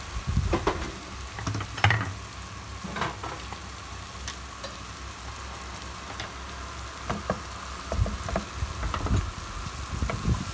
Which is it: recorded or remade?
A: recorded